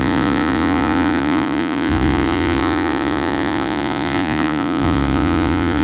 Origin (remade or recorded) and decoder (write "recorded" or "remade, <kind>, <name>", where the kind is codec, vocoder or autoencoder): remade, vocoder, Vocos